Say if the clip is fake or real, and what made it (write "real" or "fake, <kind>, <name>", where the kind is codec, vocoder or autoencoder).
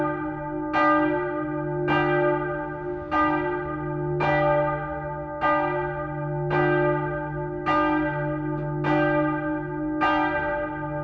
real